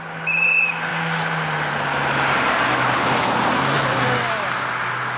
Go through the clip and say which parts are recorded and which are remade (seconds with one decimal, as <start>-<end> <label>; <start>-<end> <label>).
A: 0.0-5.2 recorded